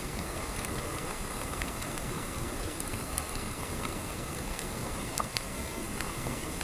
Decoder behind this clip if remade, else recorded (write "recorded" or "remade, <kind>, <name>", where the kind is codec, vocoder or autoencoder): remade, codec, SNAC